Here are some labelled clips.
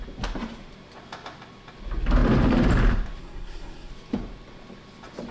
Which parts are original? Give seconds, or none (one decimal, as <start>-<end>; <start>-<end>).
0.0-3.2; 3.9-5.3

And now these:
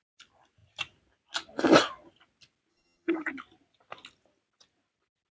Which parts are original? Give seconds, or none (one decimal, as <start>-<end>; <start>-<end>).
0.0-2.7; 3.3-5.3

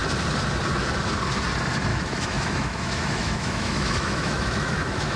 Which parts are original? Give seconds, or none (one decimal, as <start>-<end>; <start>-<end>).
0.0-1.9

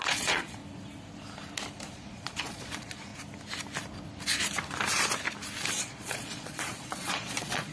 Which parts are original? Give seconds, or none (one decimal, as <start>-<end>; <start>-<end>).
0.6-1.9; 3.1-5.7

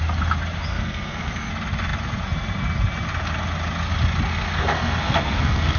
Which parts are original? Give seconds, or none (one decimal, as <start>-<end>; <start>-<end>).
0.0-0.7; 1.5-4.3

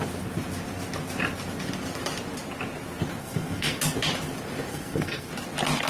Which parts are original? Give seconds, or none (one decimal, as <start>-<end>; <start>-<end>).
0.0-3.2; 3.8-4.7; 5.3-5.9